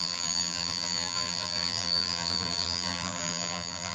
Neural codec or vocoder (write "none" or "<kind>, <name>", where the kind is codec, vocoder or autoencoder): vocoder, BigVGAN v2